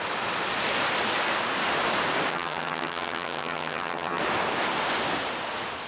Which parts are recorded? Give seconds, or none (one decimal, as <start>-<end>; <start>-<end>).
0.0-2.3; 4.2-5.9